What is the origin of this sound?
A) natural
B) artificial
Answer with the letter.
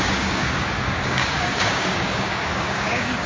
B